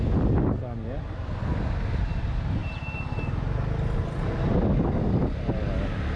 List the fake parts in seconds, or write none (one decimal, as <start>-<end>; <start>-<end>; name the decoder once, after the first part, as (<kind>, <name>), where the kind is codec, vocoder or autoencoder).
none